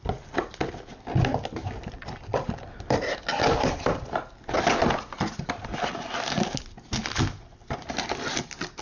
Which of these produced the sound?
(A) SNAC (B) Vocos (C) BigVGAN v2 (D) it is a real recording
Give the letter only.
D